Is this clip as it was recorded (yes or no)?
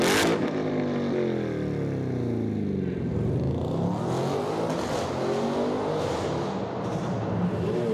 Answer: yes